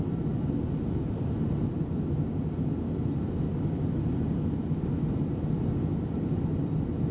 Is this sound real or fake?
real